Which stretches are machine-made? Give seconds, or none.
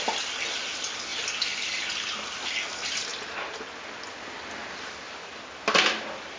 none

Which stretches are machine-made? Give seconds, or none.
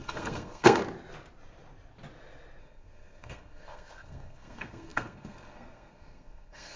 0.0-0.8 (codec, SNAC); 2.6-6.8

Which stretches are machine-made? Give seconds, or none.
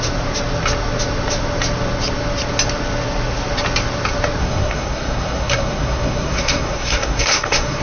4.4-7.8 (codec, SNAC)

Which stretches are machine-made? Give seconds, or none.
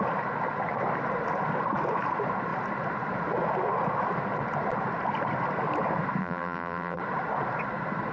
6.2-7.0 (vocoder, BigVGAN v2)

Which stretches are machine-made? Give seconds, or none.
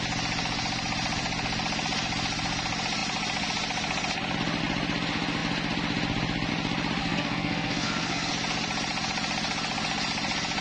7.0-8.3 (codec, SNAC)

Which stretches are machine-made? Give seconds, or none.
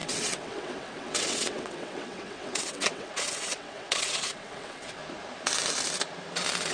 0.0-5.0 (vocoder, WaveNeXt)